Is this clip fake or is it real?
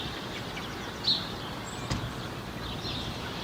real